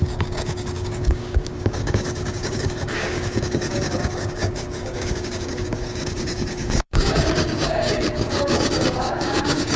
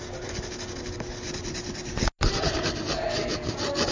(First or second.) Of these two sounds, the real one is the second